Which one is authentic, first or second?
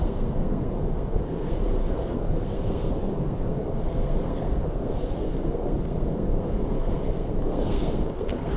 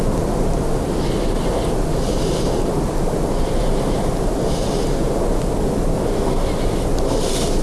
second